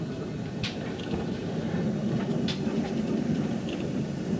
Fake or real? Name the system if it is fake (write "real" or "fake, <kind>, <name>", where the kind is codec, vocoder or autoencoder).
fake, vocoder, BigVGAN v2